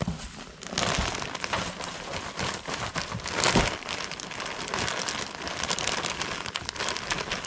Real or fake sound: real